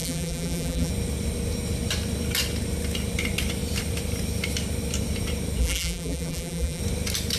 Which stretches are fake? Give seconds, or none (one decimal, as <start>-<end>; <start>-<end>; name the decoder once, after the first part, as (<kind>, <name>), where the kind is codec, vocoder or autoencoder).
0.0-0.9 (vocoder, BigVGAN v2); 5.6-6.8

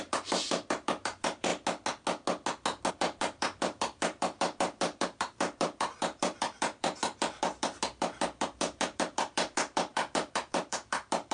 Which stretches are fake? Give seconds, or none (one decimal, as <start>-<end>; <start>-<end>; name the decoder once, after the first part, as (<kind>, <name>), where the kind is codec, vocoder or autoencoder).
0.0-1.5 (vocoder, BigVGAN v2); 2.9-11.3

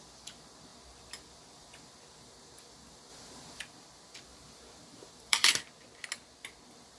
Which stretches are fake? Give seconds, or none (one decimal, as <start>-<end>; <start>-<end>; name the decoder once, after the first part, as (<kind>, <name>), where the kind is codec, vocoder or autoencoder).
3.1-3.6 (vocoder, BigVGAN v2); 4.3-5.5

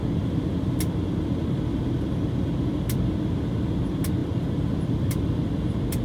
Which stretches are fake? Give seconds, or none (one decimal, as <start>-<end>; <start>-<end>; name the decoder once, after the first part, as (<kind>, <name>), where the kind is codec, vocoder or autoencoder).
none

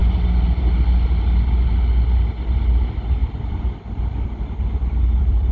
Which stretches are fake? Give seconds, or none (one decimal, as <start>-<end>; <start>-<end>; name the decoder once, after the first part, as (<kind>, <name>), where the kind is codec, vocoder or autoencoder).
3.2-5.5 (vocoder, BigVGAN v2)